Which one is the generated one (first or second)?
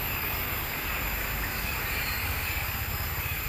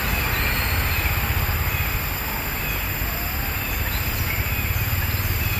first